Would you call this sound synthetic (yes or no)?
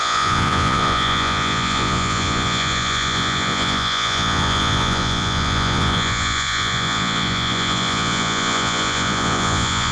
yes